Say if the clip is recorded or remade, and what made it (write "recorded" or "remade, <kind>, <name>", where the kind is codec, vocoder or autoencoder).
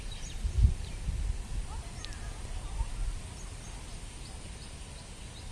recorded